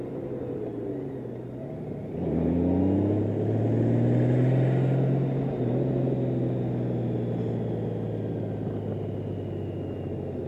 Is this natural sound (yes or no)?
yes